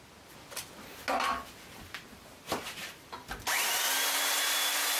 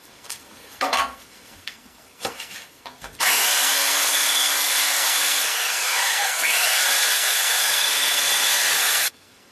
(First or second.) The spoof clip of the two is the second